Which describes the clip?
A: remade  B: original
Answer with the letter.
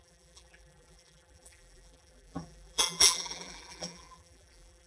A